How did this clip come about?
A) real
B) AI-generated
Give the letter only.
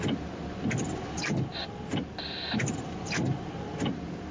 A